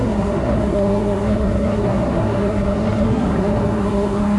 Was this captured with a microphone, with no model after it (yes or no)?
no